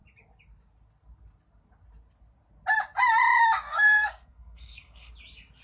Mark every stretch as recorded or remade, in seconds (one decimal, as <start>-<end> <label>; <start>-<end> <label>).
0.0-3.7 recorded; 3.7-5.1 remade; 5.1-5.6 recorded